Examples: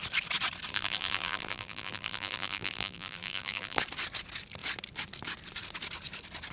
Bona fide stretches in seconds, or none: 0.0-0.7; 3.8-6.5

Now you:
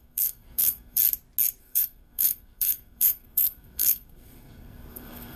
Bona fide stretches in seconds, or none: 1.0-1.6

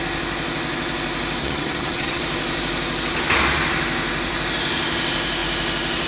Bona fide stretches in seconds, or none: 0.0-1.4; 2.2-6.1

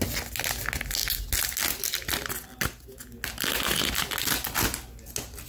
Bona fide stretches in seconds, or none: 0.0-5.5